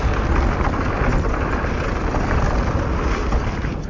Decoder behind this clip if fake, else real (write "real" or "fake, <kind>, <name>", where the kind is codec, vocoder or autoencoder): real